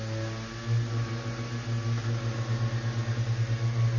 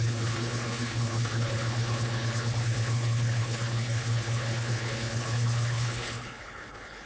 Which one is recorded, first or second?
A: first